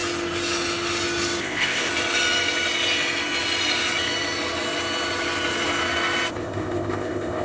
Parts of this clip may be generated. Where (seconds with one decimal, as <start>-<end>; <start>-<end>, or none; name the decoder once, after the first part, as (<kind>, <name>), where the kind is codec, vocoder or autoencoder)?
1.4-1.9 (codec, ZipCodec); 6.3-7.4